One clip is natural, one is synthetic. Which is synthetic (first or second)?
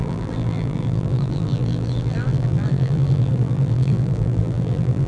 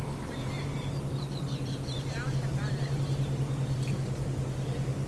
first